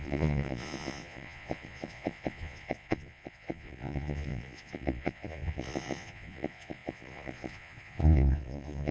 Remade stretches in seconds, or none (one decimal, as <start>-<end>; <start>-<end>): 0.0-8.9